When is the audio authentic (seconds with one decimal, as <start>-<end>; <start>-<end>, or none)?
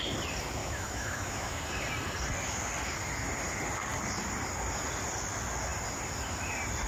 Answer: 0.0-0.6; 1.6-6.9